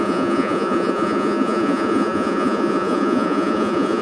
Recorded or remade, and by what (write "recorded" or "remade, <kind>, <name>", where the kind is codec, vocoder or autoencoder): remade, vocoder, Vocos